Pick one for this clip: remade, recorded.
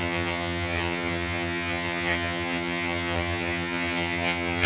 remade